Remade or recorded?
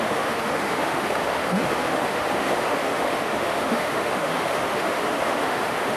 remade